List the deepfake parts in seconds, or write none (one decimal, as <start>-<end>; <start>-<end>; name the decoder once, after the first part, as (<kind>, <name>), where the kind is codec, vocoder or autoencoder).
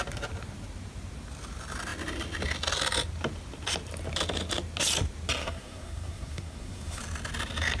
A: 5.4-7.0 (codec, SNAC)